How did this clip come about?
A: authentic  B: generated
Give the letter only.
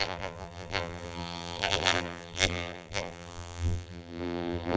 B